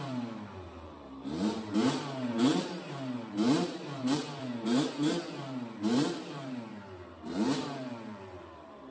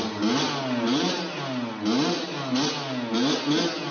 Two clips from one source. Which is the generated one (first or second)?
first